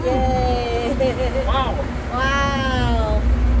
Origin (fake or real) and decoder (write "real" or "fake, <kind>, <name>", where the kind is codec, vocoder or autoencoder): real